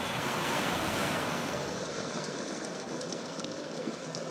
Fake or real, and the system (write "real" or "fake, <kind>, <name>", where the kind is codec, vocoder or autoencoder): fake, codec, SNAC